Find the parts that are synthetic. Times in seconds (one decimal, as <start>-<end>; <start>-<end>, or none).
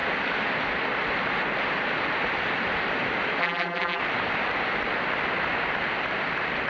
3.4-4.0